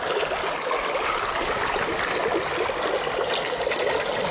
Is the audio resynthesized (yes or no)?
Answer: no